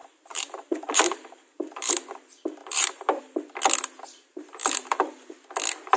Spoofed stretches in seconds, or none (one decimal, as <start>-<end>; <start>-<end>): 0.0-1.9; 2.6-3.2; 4.6-5.3